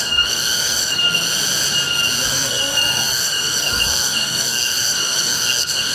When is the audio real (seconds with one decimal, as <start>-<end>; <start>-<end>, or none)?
1.0-2.3